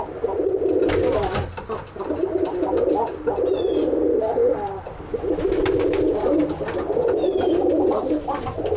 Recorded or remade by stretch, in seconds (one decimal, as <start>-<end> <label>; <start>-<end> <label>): 0.0-8.8 recorded